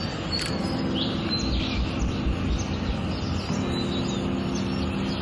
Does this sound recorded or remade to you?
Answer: recorded